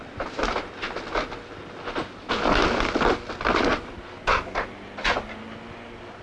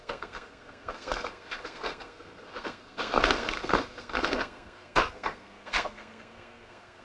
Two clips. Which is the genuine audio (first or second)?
first